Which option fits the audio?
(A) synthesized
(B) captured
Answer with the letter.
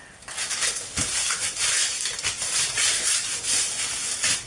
B